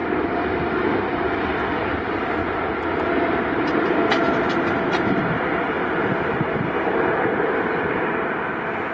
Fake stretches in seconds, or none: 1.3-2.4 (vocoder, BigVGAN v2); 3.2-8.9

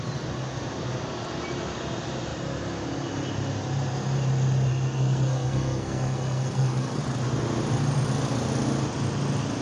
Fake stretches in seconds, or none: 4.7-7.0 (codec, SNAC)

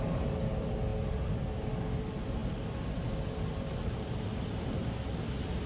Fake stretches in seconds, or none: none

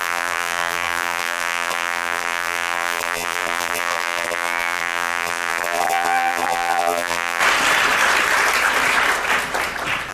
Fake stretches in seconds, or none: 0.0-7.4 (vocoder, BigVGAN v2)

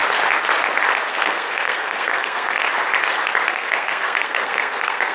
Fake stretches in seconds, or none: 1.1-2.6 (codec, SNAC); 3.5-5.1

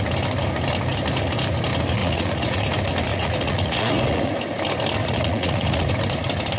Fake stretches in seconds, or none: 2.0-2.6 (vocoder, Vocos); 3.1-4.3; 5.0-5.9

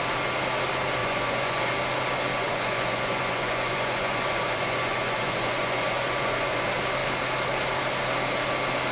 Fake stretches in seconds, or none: 1.0-1.7 (vocoder, Vocos); 2.3-6.6

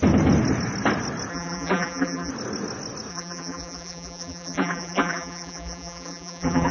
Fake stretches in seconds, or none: 1.3-2.3 (vocoder, BigVGAN v2); 3.1-6.7